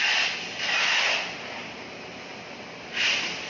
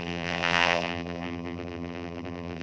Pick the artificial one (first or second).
second